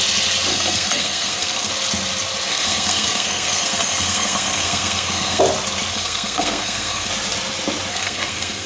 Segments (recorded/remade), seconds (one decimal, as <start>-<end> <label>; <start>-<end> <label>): 0.0-0.5 recorded; 0.5-1.7 remade; 1.7-2.5 recorded; 2.5-5.4 remade; 5.4-5.9 recorded; 5.9-7.1 remade; 7.1-7.9 recorded; 7.9-8.7 remade